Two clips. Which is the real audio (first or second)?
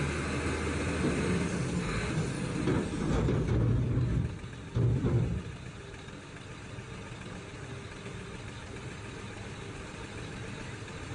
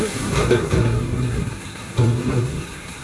first